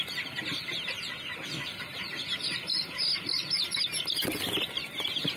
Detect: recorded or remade recorded